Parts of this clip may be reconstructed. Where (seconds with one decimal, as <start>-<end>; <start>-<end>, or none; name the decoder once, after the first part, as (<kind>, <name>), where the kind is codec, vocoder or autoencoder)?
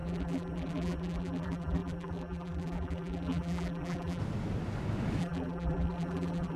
0.0-4.2 (vocoder, BigVGAN v2); 5.2-6.6